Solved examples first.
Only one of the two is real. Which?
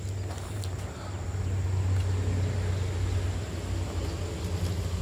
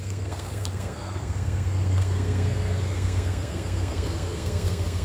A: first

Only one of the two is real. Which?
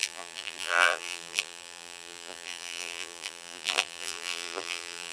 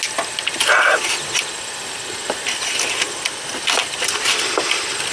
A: second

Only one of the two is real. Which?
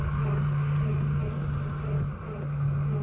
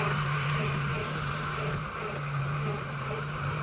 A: first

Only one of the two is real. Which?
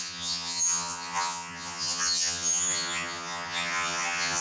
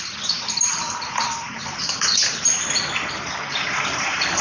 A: second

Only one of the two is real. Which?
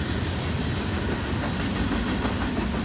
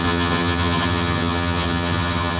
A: first